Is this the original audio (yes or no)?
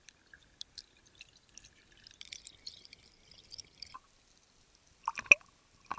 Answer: yes